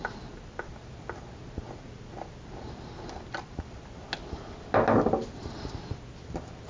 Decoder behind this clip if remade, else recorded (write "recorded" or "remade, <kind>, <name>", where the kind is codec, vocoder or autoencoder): recorded